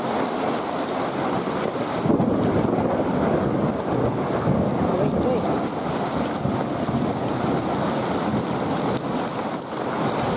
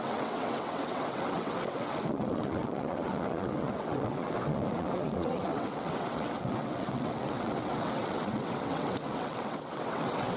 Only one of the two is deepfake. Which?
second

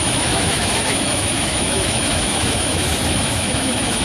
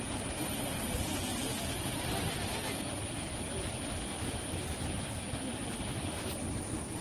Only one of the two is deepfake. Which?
first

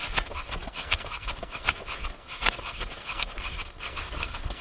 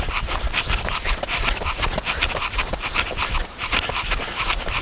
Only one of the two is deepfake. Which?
first